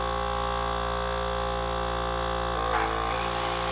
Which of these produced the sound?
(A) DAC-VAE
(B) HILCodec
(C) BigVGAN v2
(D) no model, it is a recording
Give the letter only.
D